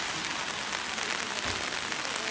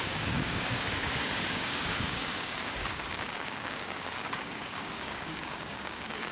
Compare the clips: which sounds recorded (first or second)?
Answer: first